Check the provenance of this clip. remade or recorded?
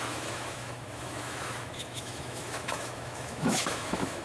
remade